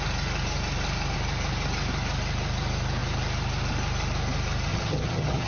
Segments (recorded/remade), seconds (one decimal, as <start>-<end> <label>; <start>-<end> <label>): 0.0-4.7 recorded; 4.7-5.5 remade